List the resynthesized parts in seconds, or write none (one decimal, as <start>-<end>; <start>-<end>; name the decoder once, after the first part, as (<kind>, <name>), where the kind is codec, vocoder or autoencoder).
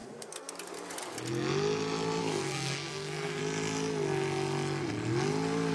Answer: 0.0-0.5 (codec, SNAC); 2.2-3.4